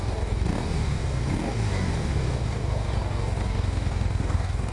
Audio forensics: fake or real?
fake